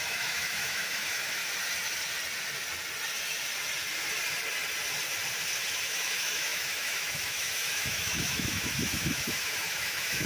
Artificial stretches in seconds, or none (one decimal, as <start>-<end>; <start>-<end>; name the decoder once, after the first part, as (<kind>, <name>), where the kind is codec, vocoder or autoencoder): 0.0-1.4 (autoencoder, DAC-VAE); 5.8-10.3